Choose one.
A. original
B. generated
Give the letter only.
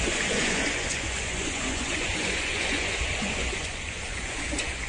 B